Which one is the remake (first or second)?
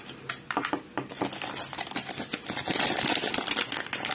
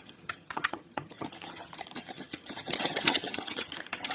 second